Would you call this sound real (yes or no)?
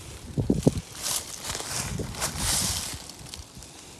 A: yes